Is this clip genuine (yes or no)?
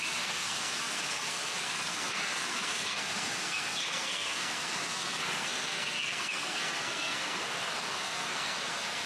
no